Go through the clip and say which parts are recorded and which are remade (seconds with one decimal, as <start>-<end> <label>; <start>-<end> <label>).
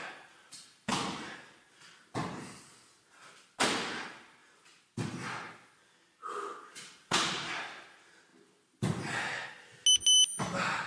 0.0-10.9 recorded